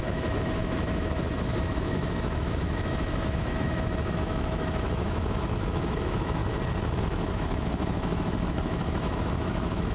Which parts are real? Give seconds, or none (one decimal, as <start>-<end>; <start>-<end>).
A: 6.4-7.0